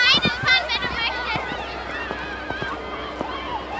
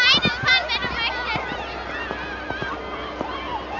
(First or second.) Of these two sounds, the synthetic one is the first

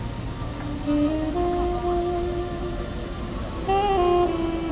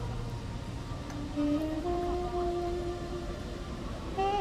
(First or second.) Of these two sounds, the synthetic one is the second